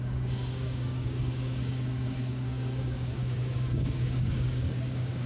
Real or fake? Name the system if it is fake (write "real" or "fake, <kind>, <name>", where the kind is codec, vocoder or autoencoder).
fake, codec, DAC